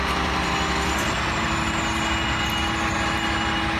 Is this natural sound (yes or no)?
yes